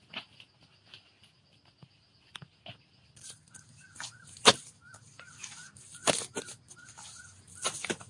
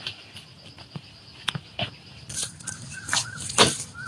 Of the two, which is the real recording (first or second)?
first